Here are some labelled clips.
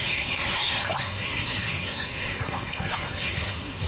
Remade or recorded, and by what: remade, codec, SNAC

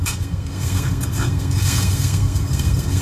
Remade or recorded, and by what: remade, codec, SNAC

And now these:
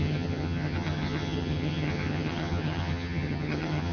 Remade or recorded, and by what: remade, vocoder, HiFi-GAN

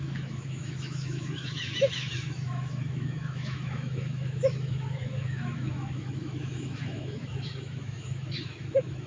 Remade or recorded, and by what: remade, autoencoder, DAC-VAE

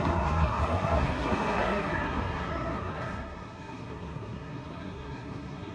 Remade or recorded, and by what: remade, codec, SNAC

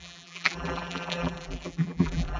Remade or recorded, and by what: remade, vocoder, BigVGAN v2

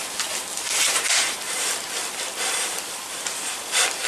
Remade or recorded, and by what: remade, vocoder, BigVGAN v2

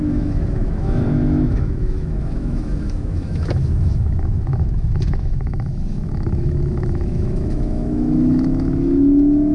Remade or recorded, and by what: remade, autoencoder, DAC-VAE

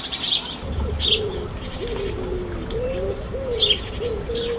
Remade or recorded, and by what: recorded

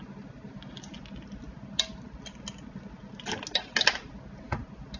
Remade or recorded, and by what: recorded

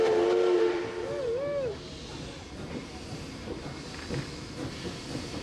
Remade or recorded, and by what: recorded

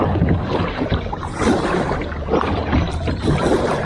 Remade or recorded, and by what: recorded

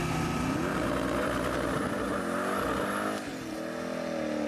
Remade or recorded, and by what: recorded